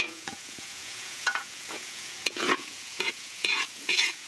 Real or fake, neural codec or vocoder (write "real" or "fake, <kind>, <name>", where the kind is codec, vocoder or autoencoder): fake, vocoder, Vocos